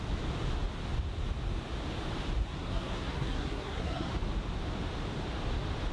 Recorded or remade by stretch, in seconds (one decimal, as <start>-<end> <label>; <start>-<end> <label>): 0.0-2.4 recorded; 2.4-4.1 remade; 4.1-5.9 recorded